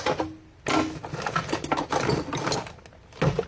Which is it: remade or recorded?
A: recorded